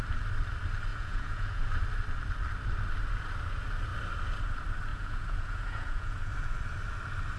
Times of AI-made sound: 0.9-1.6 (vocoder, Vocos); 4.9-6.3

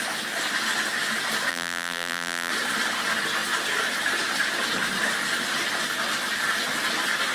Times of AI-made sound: 1.5-2.5 (vocoder, BigVGAN v2)

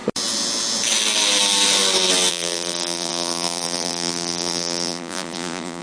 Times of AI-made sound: 2.3-5.8 (vocoder, BigVGAN v2)

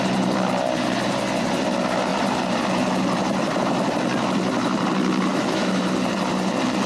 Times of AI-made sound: 5.3-5.8 (autoencoder, DAC-VAE)

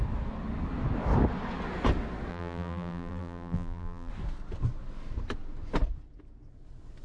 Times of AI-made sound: 2.3-4.1 (vocoder, BigVGAN v2)

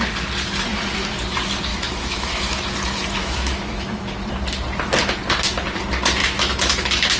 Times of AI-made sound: 1.7-2.7 (autoencoder, DAC-VAE); 3.2-4.3; 6.2-7.2